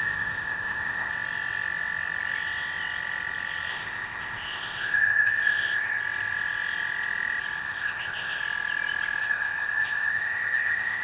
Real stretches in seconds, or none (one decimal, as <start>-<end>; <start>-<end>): 1.1-3.7; 6.0-7.6; 8.4-9.2